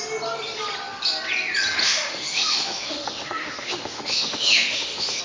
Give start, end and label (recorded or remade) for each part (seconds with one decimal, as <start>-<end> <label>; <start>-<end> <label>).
0.0-1.8 recorded; 1.8-5.2 remade